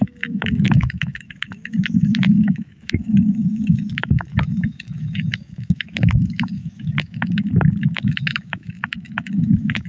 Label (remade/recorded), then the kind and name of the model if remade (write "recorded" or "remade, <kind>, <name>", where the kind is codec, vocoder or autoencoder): remade, autoencoder, DAC-VAE